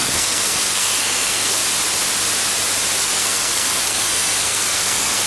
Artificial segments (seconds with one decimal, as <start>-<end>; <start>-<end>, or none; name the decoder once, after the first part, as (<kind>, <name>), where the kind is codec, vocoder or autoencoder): 0.0-1.6 (codec, SNAC); 3.0-5.3